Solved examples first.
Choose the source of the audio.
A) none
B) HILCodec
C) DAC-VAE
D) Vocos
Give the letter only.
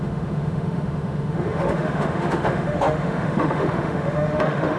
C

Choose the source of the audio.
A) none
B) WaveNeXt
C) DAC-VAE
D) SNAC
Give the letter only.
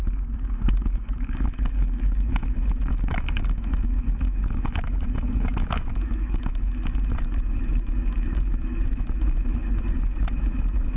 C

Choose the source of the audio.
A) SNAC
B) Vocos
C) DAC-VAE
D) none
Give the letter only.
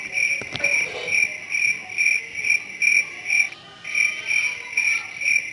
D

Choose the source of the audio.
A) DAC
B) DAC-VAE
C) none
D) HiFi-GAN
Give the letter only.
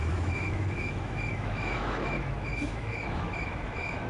B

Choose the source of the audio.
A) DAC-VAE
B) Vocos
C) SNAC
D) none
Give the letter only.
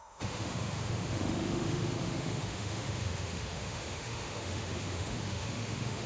A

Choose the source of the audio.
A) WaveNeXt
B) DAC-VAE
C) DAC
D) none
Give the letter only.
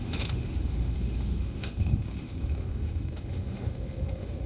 B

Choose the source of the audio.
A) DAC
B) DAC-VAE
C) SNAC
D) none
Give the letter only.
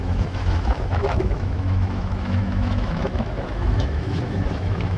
B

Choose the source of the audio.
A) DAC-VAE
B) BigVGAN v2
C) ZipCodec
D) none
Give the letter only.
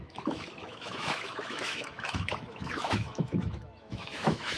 A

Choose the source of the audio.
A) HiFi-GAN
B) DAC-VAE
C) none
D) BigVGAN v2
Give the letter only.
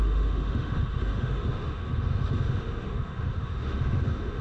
B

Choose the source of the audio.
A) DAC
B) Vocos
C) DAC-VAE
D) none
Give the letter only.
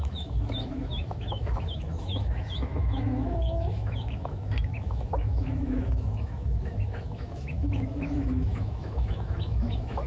C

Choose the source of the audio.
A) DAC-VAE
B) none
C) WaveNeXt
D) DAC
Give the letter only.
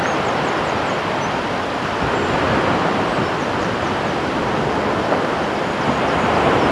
B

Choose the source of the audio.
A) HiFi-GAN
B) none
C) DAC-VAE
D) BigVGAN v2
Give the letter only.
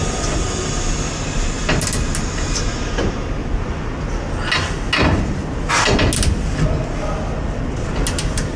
B